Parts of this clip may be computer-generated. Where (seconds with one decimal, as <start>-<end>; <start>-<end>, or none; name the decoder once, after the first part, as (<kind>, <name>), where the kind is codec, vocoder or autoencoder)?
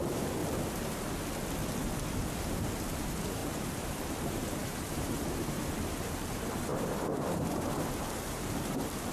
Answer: 0.0-0.4 (vocoder, BigVGAN v2); 2.4-9.1